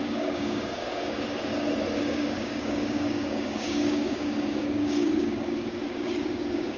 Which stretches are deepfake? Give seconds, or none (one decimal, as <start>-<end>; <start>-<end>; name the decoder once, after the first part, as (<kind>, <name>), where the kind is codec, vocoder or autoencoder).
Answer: 0.0-1.5 (codec, DAC); 2.0-6.8